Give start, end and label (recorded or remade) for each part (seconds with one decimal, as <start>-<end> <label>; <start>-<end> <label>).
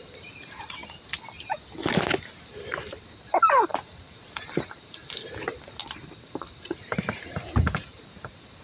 0.0-0.8 remade; 0.8-2.3 recorded; 2.3-5.0 remade; 5.0-5.8 recorded; 5.8-8.6 remade